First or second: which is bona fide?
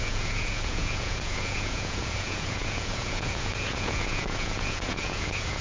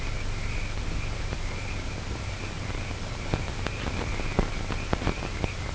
second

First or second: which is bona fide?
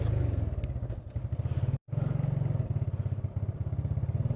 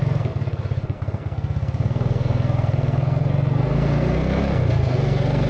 first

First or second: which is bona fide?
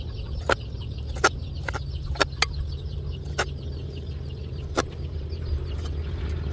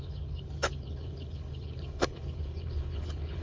first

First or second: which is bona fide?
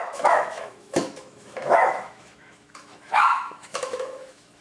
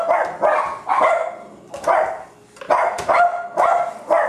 second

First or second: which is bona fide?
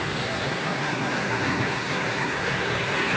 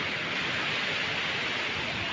second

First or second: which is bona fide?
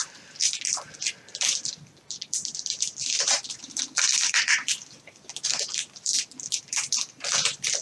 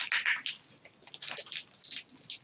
second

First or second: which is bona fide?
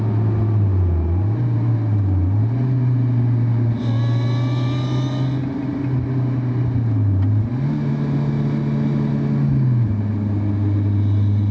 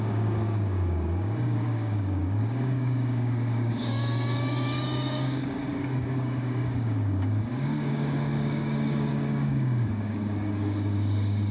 first